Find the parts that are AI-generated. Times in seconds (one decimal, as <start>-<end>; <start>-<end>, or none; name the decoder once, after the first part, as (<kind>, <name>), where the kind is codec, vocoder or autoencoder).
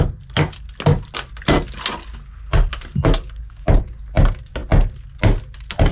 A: 3.0-3.8 (codec, DAC)